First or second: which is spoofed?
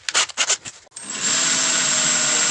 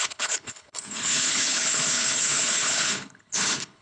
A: second